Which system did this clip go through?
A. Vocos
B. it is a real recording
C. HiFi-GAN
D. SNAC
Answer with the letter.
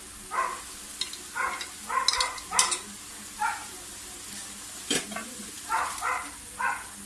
B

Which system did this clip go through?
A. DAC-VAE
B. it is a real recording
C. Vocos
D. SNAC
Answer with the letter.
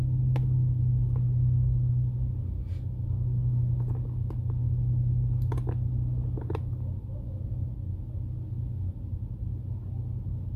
B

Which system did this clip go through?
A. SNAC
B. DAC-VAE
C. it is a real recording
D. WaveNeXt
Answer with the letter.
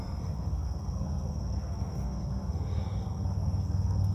A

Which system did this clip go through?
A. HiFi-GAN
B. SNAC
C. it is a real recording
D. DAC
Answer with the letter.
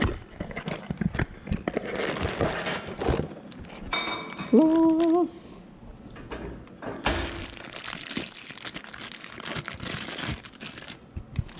C